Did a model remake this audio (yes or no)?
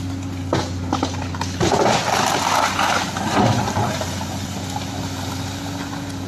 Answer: no